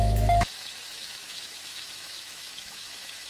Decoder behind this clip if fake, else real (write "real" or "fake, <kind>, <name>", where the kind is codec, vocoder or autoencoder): fake, autoencoder, DAC-VAE